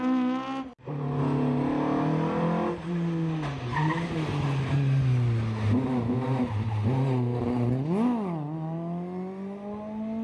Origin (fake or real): real